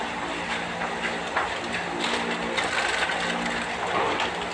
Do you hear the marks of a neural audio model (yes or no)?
no